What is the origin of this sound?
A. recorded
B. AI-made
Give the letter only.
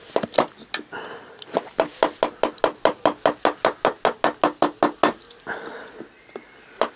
A